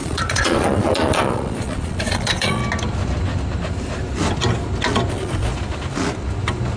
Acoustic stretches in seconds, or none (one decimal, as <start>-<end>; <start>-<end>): 2.6-5.1; 5.5-6.8

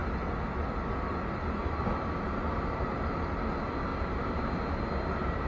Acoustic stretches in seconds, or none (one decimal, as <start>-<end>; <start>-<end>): 0.0-1.6; 3.3-3.9; 4.8-5.5